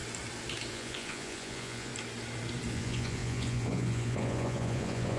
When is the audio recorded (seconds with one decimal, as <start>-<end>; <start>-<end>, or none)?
0.0-0.7; 1.9-2.7